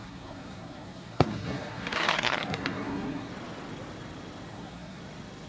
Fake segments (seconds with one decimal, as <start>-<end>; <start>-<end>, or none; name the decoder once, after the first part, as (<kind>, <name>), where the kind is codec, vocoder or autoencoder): 0.0-3.3 (codec, SNAC); 4.5-5.0